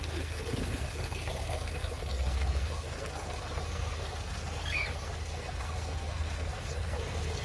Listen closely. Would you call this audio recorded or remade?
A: remade